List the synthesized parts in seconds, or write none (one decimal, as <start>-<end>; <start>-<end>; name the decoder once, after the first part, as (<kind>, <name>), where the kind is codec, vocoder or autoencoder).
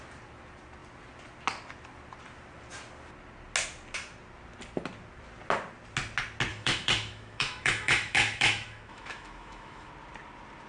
6.5-9.9 (autoencoder, DAC-VAE)